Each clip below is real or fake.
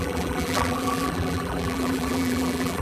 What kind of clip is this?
fake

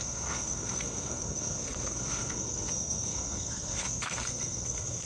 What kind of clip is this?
fake